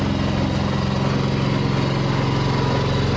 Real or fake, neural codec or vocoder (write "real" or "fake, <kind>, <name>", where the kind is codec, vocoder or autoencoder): real